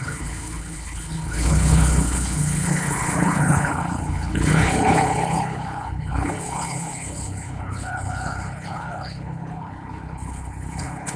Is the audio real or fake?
fake